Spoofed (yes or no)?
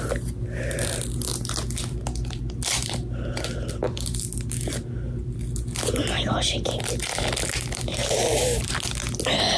no